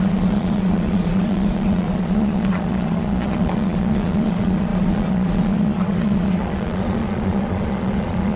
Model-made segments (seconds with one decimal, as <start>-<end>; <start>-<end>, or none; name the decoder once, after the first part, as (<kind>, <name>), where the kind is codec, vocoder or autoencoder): 0.0-8.4 (vocoder, Vocos)